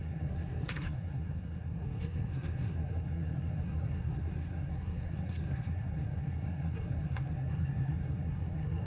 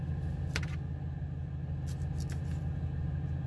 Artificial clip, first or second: first